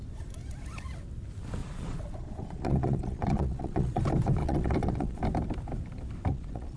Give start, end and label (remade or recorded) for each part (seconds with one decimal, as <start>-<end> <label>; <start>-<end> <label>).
0.0-1.6 recorded; 1.6-4.0 remade; 4.0-4.4 recorded; 4.4-5.2 remade; 5.2-6.3 recorded; 6.3-6.8 remade